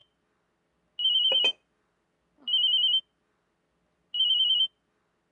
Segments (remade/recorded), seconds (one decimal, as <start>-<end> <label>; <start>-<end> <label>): 0.0-5.3 recorded